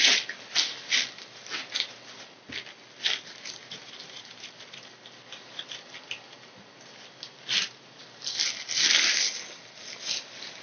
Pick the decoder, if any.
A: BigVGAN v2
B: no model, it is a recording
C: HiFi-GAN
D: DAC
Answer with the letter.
B